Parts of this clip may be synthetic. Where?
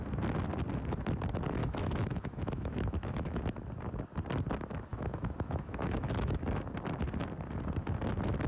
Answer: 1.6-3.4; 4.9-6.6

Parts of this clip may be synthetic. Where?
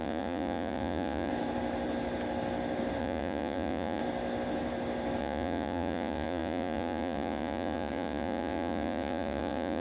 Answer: 0.0-1.3; 3.0-4.0; 5.2-9.8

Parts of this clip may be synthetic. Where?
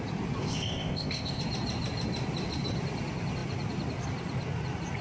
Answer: 0.4-1.4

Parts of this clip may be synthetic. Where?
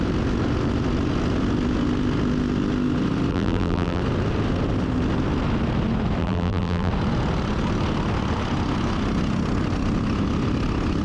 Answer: 3.3-4.0; 6.2-6.9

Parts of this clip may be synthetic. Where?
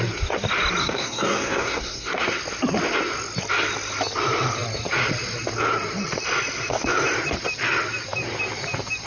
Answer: 0.8-2.4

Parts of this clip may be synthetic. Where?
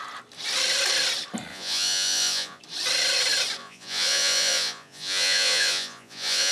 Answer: 1.5-2.6; 3.6-6.5